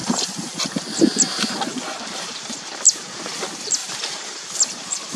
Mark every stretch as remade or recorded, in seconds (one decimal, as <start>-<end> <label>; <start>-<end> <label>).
0.0-0.6 remade; 0.6-3.8 recorded; 3.8-4.5 remade; 4.5-5.2 recorded